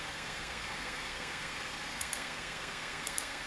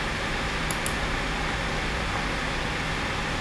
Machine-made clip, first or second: first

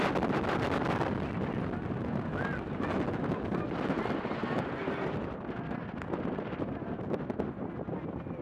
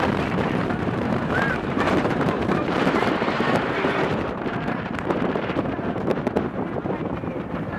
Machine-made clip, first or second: second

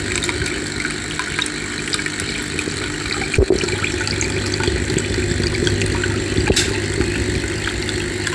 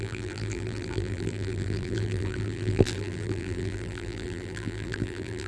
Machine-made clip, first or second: second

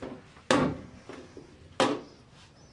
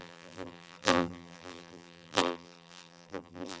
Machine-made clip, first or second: second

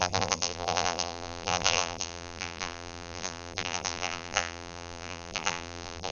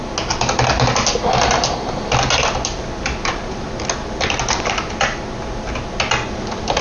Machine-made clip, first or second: first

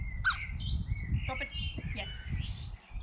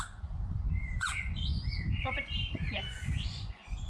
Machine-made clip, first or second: second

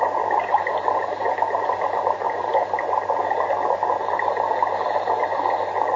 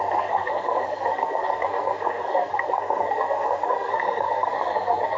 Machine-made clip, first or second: second